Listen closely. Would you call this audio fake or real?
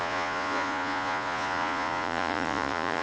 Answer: fake